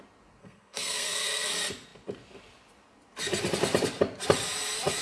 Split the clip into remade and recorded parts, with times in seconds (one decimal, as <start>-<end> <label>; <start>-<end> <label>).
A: 0.0-0.4 recorded; 0.4-1.5 remade; 1.5-5.0 recorded